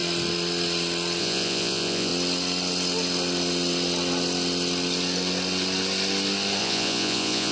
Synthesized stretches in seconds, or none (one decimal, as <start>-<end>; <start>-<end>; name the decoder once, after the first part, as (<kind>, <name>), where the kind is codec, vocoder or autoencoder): 1.2-2.1 (vocoder, Vocos); 6.6-7.5